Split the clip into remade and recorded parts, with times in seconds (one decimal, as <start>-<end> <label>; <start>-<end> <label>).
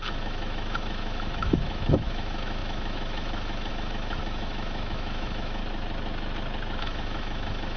0.0-5.6 remade; 5.6-6.8 recorded; 6.8-7.8 remade